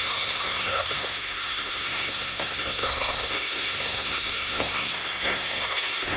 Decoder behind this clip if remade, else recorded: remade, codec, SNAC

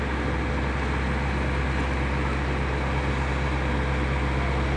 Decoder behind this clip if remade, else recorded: recorded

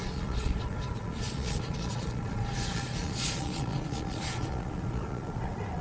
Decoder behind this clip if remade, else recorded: remade, vocoder, Vocos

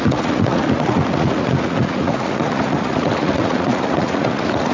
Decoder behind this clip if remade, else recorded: remade, vocoder, Vocos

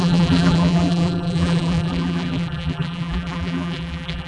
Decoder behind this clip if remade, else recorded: remade, vocoder, BigVGAN v2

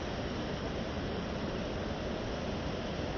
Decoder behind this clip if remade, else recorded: recorded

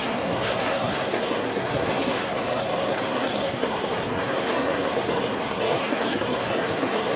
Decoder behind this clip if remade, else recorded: remade, codec, SNAC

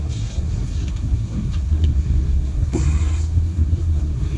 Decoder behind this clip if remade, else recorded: remade, codec, SNAC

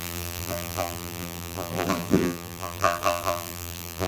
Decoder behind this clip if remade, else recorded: remade, vocoder, BigVGAN v2